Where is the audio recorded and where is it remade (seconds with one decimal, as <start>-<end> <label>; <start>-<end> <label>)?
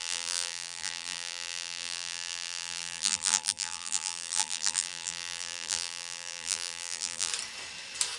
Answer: 0.0-7.3 remade; 7.3-8.2 recorded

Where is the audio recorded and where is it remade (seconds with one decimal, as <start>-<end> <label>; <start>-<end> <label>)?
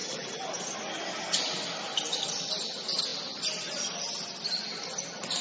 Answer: 0.0-5.4 recorded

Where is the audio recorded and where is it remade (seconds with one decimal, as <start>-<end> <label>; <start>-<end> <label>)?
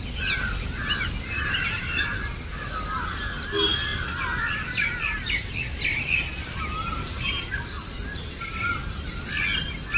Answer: 0.0-10.0 recorded